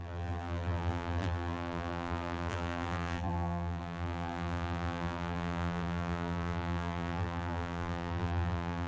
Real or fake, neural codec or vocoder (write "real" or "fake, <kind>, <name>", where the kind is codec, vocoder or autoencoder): fake, vocoder, BigVGAN v2